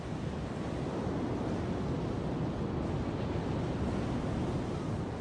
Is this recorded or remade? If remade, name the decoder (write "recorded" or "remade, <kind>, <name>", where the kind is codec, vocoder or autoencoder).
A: recorded